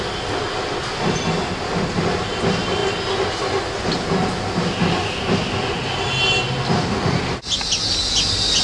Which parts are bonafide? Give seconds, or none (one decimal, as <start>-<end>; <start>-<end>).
0.0-8.6